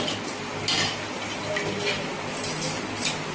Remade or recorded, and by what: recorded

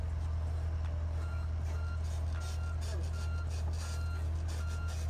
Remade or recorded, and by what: recorded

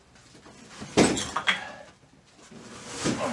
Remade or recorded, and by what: recorded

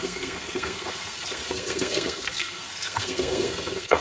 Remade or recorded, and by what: remade, codec, SNAC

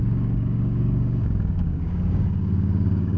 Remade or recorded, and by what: remade, codec, DAC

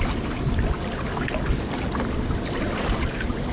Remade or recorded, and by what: recorded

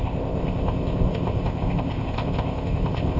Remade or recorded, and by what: remade, codec, ZipCodec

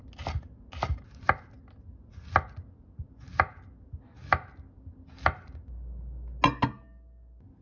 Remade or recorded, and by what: recorded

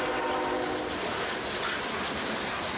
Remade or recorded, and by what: recorded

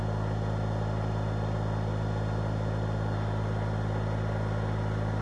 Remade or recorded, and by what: recorded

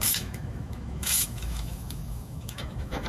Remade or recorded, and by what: remade, autoencoder, DAC-VAE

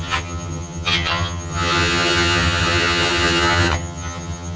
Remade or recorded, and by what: remade, vocoder, HiFi-GAN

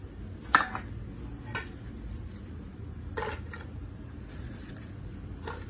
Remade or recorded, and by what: recorded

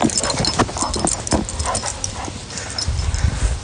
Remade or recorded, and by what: recorded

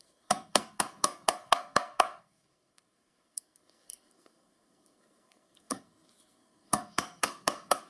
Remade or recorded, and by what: remade, codec, SNAC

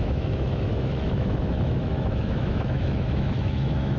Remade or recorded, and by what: remade, autoencoder, DAC-VAE